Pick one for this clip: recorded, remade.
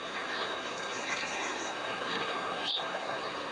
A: remade